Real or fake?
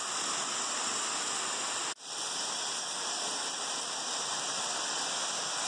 real